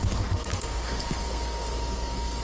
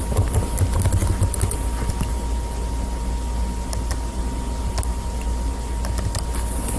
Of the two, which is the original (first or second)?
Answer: second